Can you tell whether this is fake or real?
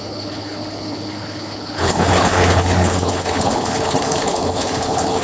fake